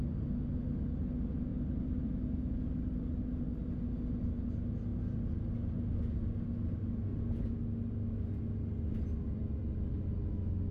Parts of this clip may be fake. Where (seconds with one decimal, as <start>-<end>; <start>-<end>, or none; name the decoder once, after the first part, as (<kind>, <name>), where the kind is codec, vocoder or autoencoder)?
none